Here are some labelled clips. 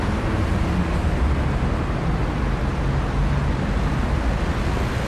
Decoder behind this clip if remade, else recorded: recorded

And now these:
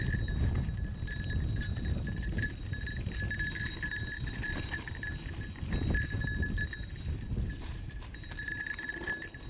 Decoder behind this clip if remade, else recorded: recorded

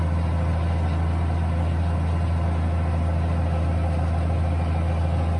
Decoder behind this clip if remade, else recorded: recorded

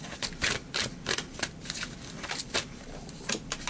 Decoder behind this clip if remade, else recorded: recorded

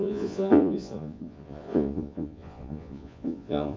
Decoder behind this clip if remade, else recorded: remade, vocoder, Vocos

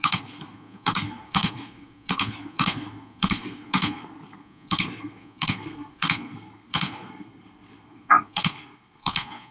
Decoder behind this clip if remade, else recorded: remade, codec, SNAC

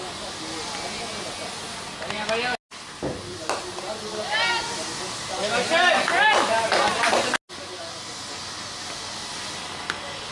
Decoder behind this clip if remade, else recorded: recorded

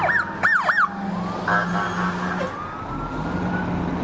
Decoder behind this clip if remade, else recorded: recorded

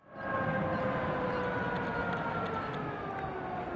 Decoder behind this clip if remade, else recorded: recorded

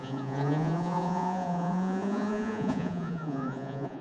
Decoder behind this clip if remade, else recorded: remade, vocoder, Vocos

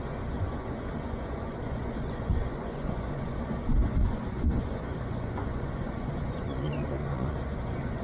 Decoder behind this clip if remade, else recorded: remade, vocoder, Vocos